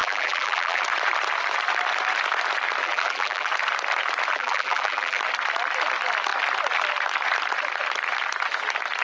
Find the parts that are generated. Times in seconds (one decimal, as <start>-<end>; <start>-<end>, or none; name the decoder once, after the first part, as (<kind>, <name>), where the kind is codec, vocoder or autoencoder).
0.0-0.8 (vocoder, BigVGAN v2); 2.8-3.5; 4.3-5.2